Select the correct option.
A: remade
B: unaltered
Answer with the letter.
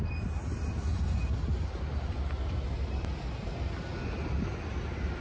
B